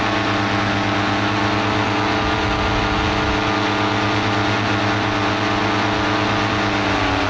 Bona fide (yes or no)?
yes